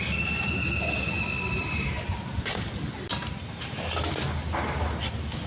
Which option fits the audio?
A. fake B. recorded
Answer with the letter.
B